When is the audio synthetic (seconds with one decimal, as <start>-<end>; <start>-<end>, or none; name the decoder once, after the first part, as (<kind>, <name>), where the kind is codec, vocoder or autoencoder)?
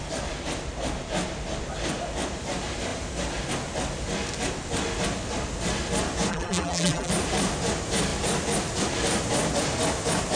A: 6.3-7.1 (vocoder, BigVGAN v2)